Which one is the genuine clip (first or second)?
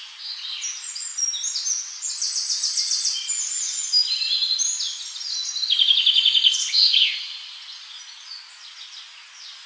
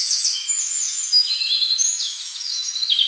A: first